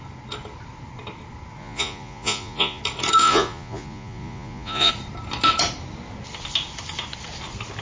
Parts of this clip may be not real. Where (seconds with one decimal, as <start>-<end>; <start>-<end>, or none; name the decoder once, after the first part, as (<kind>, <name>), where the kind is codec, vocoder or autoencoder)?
1.6-2.8 (vocoder, Vocos); 3.2-4.9